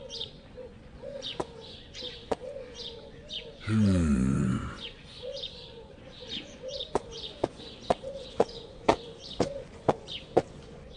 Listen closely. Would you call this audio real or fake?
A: fake